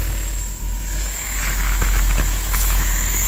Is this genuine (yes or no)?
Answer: no